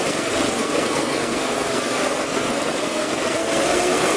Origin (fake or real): fake